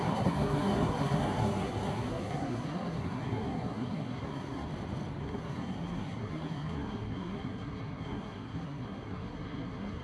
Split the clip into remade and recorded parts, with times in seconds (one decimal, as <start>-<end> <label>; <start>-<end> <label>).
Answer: 0.0-4.7 remade; 4.7-5.2 recorded; 5.2-10.0 remade

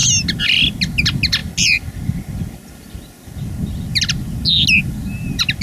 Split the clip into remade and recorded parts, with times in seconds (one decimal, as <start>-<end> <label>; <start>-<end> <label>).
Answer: 0.0-5.6 recorded

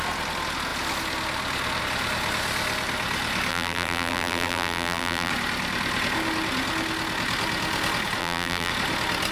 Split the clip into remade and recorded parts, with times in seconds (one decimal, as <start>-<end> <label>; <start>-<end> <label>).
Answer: 0.0-3.5 recorded; 3.5-5.3 remade; 5.3-8.2 recorded; 8.2-8.7 remade; 8.7-9.3 recorded

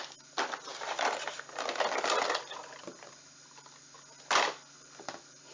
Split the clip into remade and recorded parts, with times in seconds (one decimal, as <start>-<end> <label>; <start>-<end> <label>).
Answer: 0.0-5.5 recorded

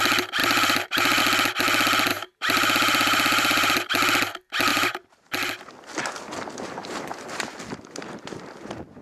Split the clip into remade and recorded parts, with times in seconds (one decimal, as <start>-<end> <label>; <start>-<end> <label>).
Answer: 0.0-0.4 recorded; 0.4-1.2 remade; 1.2-2.1 recorded; 2.1-3.9 remade; 3.9-4.7 recorded; 4.7-5.3 remade; 5.3-6.8 recorded; 6.8-7.6 remade; 7.6-9.0 recorded

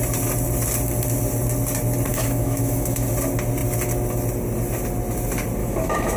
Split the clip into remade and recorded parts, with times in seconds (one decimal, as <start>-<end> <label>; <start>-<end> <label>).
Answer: 0.0-2.1 recorded; 2.1-3.1 remade; 3.1-5.6 recorded; 5.6-6.2 remade

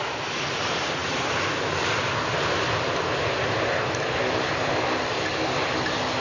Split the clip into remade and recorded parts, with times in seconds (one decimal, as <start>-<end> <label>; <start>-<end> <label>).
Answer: 0.0-6.2 recorded